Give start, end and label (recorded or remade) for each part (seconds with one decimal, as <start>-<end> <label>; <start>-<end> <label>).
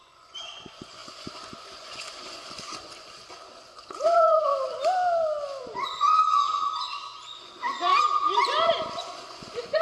0.0-4.5 remade; 4.5-5.6 recorded; 5.6-7.9 remade; 7.9-8.5 recorded; 8.5-9.8 remade